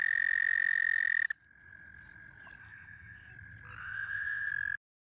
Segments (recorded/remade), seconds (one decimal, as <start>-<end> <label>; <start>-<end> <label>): 0.0-2.6 recorded; 2.6-3.3 remade; 3.3-3.8 recorded; 3.8-4.5 remade; 4.5-5.1 recorded